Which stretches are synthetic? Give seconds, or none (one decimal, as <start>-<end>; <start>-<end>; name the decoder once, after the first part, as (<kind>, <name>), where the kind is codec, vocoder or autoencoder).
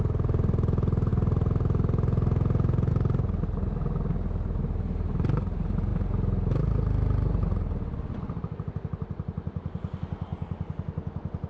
none